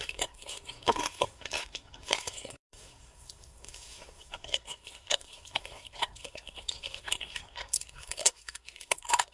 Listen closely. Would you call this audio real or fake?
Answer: fake